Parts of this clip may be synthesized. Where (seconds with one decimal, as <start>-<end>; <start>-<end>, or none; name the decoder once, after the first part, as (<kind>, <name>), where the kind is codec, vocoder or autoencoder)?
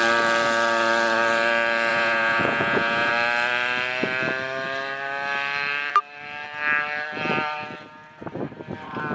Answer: 1.9-3.1 (vocoder, Vocos)